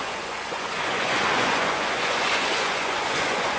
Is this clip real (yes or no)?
no